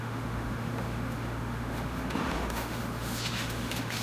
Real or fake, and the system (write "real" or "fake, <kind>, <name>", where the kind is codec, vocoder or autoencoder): fake, autoencoder, DAC-VAE